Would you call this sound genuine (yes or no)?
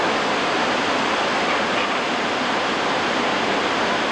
yes